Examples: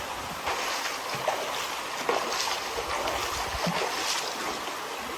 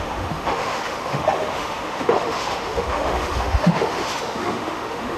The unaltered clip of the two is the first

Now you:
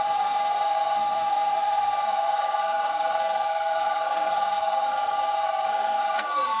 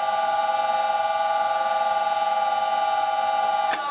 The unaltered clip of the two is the second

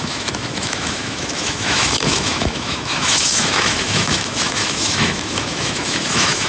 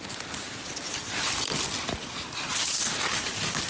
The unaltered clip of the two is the second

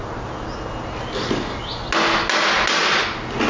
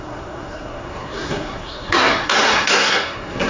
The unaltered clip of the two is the first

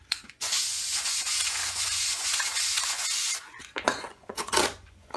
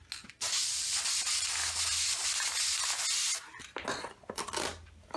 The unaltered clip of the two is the second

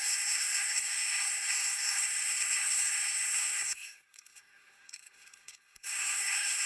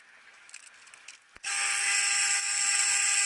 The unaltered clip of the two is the second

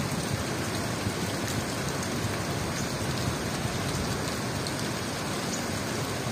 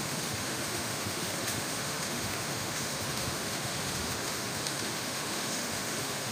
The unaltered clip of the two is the first